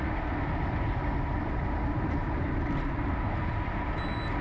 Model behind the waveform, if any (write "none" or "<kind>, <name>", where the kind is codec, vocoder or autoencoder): none